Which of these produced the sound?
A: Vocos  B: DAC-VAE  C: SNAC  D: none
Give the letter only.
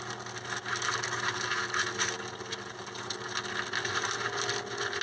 D